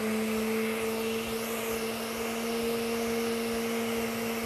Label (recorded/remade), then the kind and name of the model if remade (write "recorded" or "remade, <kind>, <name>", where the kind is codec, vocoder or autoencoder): recorded